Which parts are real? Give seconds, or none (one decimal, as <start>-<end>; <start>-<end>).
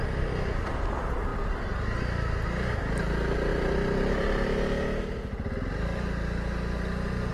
0.0-7.3